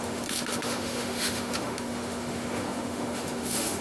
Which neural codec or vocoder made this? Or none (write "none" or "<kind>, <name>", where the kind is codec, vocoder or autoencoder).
autoencoder, DAC-VAE